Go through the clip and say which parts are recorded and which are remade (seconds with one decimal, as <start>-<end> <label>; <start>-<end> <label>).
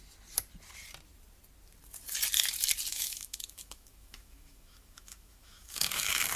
0.0-2.9 recorded; 2.9-6.4 remade